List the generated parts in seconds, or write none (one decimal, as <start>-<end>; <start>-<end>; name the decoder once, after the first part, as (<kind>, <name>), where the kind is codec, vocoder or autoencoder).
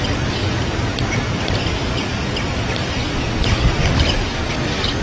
none